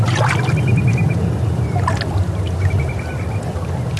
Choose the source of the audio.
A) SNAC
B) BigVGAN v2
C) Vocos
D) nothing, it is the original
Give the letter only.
D